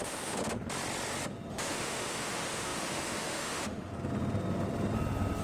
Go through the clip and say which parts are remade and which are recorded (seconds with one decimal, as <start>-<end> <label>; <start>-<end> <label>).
0.0-0.4 remade; 0.4-1.5 recorded; 1.5-3.9 remade; 3.9-5.4 recorded